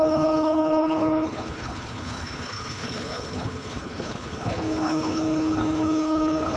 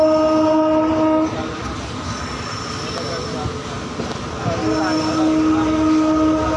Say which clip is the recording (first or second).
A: second